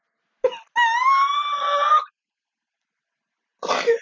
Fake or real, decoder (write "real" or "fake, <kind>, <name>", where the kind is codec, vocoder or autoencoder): real